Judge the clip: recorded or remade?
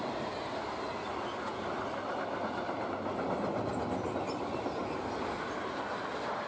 recorded